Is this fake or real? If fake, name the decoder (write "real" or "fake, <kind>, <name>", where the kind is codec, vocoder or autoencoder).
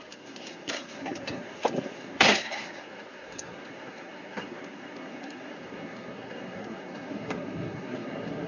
fake, codec, SNAC